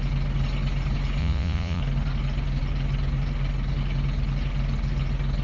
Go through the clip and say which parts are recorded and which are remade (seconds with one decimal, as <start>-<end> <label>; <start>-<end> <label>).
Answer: 0.0-1.2 recorded; 1.2-1.8 remade; 1.8-5.4 recorded